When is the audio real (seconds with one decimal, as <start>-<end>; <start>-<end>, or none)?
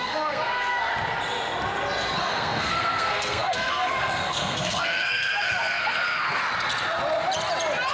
0.9-2.2; 6.4-7.9